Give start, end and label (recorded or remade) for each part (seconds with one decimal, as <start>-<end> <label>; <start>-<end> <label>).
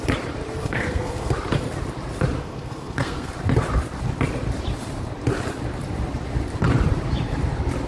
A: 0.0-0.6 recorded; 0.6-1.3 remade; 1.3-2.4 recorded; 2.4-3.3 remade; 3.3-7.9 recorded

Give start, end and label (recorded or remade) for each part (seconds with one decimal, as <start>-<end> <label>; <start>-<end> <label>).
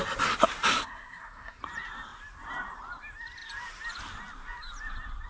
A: 0.0-0.7 recorded; 0.7-1.6 remade; 1.6-5.3 recorded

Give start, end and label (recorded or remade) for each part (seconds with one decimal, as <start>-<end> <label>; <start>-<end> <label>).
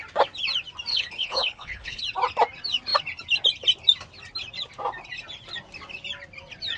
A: 0.0-0.9 recorded; 0.9-2.0 remade; 2.0-6.8 recorded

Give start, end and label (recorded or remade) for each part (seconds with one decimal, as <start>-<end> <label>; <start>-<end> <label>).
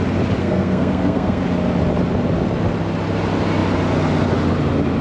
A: 0.0-0.4 recorded; 0.4-1.4 remade; 1.4-5.0 recorded